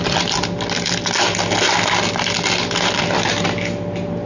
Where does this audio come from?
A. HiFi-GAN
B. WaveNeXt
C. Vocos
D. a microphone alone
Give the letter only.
D